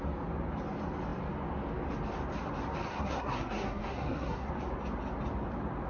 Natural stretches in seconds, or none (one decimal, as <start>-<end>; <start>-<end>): 0.0-2.9; 4.5-5.9

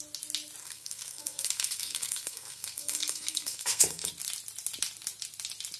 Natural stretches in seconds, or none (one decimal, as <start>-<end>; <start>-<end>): 0.0-0.6; 4.1-5.8

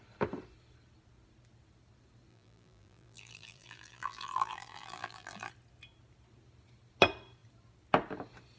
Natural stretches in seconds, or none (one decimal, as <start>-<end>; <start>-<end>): 0.0-2.3; 5.5-8.6

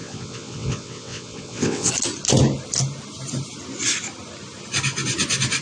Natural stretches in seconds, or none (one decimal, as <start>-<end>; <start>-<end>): 1.9-5.6

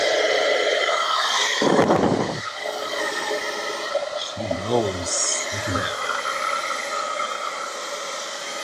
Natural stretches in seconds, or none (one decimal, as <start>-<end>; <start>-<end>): 0.0-0.7; 3.4-8.6

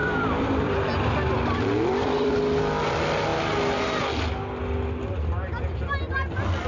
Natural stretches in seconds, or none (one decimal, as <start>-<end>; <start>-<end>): 2.3-6.7

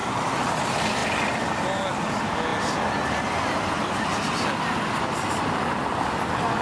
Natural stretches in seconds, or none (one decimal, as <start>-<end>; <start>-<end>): 0.5-6.6